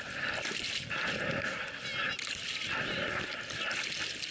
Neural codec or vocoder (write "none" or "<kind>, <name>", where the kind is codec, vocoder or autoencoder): none